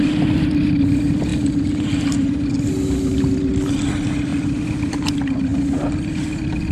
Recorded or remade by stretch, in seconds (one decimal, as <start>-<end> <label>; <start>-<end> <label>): 0.0-6.7 recorded